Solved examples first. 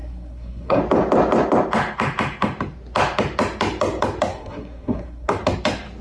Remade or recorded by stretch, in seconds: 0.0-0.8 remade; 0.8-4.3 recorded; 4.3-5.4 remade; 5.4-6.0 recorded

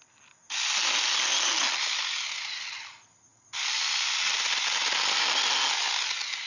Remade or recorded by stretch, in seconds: 0.0-6.5 recorded